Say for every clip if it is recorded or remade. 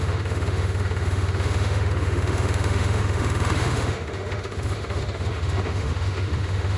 remade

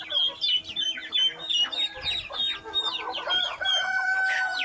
recorded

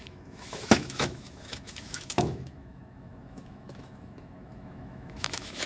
remade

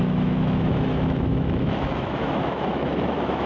remade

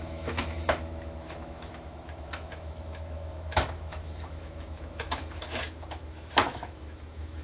remade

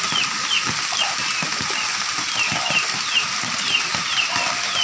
recorded